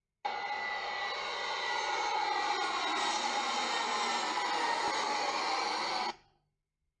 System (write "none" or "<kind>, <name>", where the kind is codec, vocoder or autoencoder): none